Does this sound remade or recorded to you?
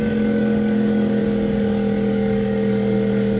remade